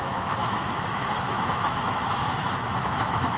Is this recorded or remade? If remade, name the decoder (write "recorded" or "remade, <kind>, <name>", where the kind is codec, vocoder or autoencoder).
remade, autoencoder, DAC-VAE